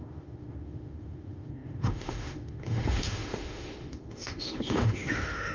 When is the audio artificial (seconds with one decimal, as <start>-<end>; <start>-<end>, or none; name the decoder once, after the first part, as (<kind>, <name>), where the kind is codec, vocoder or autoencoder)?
0.0-5.5 (autoencoder, DAC-VAE)